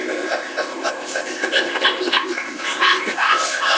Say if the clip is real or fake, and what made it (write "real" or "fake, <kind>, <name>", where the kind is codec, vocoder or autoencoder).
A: fake, codec, ZipCodec